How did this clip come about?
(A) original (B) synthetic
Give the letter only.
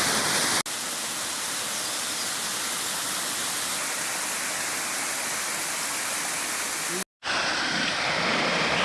A